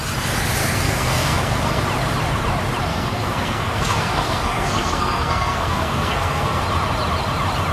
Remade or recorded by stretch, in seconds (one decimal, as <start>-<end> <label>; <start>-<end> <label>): 0.0-0.6 recorded; 0.6-1.8 remade; 1.8-2.9 recorded; 2.9-6.6 remade; 6.6-7.7 recorded